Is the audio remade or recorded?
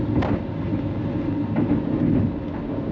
recorded